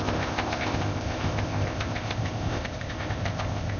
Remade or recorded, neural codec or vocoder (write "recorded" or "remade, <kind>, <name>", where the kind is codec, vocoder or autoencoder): remade, codec, ZipCodec